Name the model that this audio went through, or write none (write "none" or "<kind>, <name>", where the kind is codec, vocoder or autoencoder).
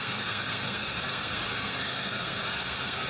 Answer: codec, SNAC